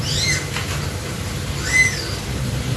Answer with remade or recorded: recorded